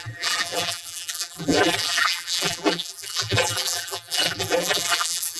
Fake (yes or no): yes